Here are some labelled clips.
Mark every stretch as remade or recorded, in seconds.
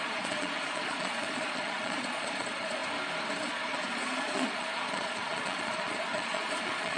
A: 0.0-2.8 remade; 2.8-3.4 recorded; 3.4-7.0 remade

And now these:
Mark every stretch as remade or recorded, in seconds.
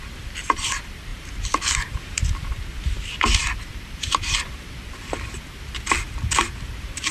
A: 0.0-1.1 recorded; 1.1-2.5 remade; 2.5-3.7 recorded; 3.7-4.4 remade; 4.4-7.1 recorded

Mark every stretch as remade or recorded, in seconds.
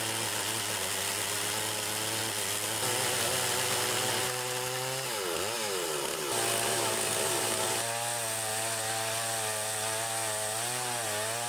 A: 0.0-11.5 recorded